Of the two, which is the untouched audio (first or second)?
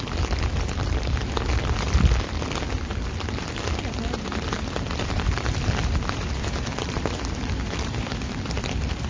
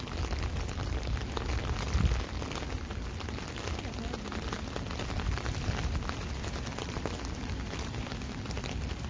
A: second